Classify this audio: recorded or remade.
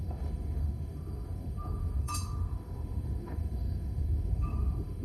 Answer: remade